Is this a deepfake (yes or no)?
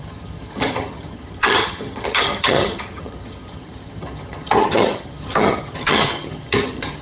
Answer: yes